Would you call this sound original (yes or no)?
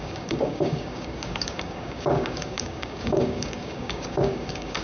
no